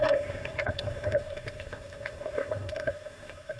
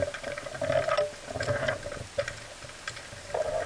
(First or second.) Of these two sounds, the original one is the second